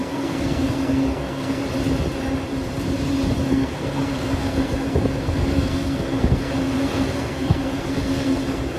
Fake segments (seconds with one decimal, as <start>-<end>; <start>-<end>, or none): 0.0-1.6; 3.5-8.8